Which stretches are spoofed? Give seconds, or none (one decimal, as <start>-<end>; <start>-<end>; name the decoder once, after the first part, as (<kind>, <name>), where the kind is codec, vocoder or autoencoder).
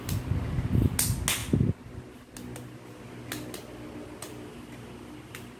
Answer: none